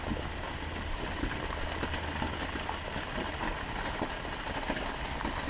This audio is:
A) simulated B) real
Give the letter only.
B